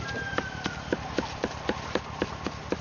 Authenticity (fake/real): real